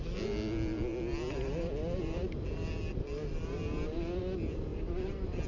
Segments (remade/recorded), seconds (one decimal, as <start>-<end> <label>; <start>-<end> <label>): 0.0-5.5 recorded